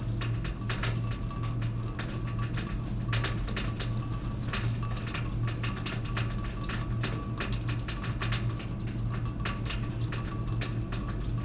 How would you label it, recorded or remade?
recorded